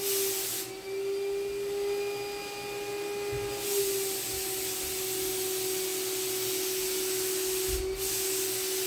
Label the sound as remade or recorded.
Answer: recorded